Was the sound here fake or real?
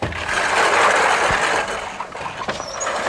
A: real